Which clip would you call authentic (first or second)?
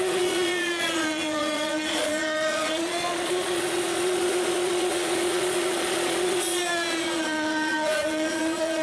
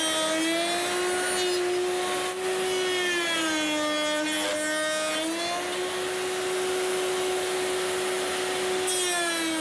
second